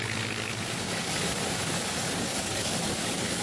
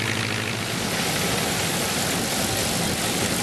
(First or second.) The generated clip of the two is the first